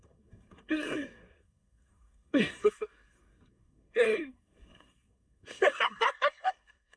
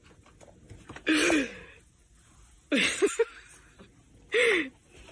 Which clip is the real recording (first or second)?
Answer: second